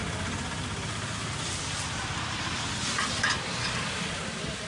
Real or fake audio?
real